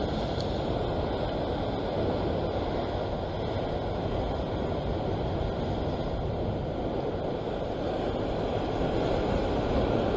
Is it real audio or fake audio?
real